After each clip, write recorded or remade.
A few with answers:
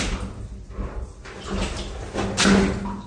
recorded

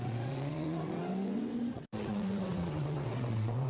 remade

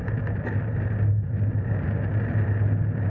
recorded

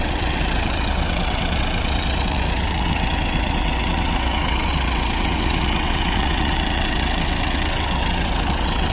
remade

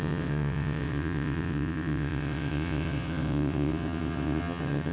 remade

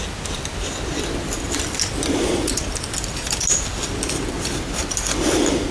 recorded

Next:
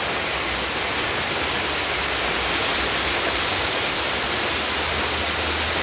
recorded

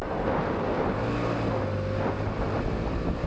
recorded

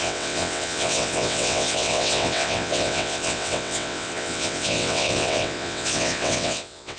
remade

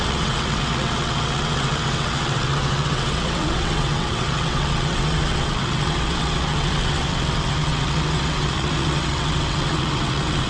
remade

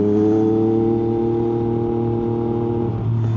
recorded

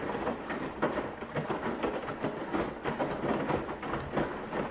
recorded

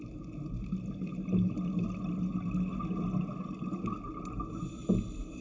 recorded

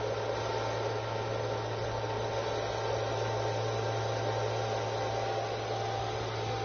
recorded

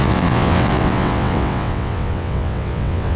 remade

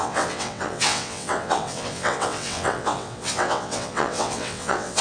remade